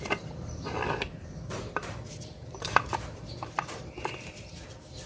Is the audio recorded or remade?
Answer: remade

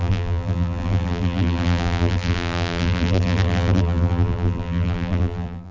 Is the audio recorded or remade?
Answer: remade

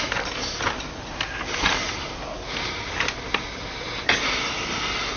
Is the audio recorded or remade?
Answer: recorded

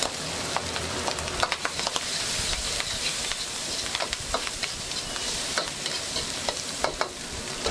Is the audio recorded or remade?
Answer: remade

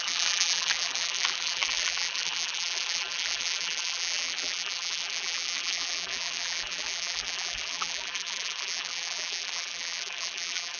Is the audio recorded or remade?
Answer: remade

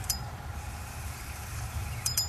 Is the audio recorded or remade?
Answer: remade